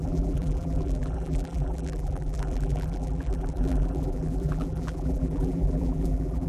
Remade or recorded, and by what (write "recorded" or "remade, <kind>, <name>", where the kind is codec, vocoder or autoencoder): remade, vocoder, BigVGAN v2